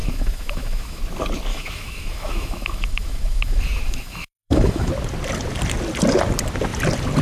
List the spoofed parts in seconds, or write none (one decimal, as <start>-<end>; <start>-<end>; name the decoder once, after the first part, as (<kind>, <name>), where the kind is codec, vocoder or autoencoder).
0.0-1.0 (autoencoder, DAC-VAE); 1.5-4.9